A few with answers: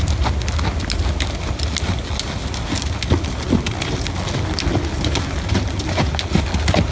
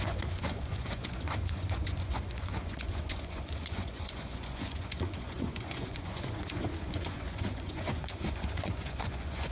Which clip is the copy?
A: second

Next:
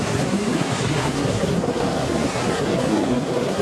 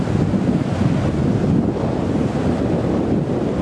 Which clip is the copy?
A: first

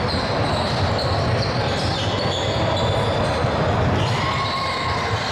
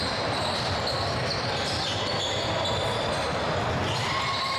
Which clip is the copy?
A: second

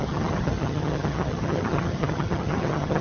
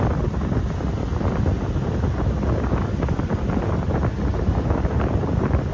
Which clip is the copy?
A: first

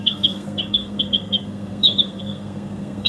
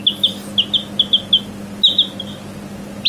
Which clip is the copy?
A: first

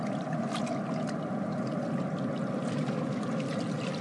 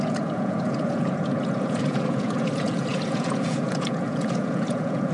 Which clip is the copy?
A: second